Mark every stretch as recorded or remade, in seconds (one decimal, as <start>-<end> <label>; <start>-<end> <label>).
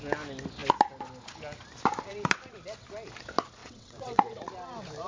0.0-3.6 recorded; 3.6-4.4 remade; 4.4-5.1 recorded